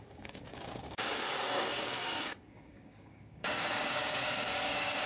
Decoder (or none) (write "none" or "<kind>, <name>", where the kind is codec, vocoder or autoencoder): codec, DAC